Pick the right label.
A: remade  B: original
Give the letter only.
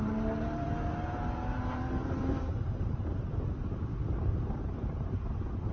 A